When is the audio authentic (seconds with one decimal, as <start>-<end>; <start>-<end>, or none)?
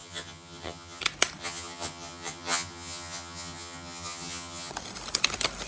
1.0-1.4; 4.7-5.7